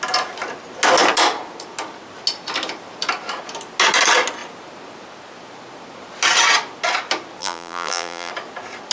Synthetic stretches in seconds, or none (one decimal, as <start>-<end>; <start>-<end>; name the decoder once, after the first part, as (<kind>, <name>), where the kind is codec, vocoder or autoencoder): 7.4-8.3 (vocoder, BigVGAN v2)